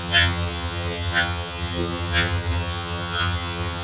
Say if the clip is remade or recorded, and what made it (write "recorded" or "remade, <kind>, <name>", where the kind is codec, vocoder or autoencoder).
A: remade, vocoder, HiFi-GAN